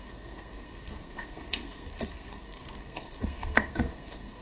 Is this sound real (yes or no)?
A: no